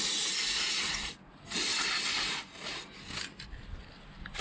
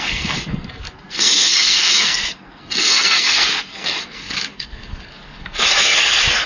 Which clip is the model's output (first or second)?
second